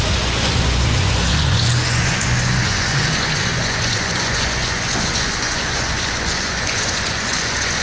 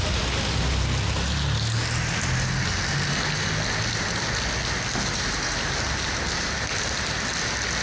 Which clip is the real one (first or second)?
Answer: second